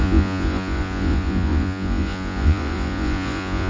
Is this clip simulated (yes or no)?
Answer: yes